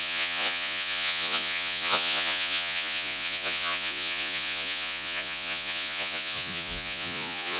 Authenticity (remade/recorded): remade